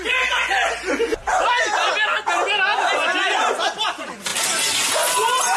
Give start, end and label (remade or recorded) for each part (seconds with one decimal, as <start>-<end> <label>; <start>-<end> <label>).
0.0-1.1 recorded; 1.1-1.9 remade; 1.9-4.3 recorded; 4.3-5.6 remade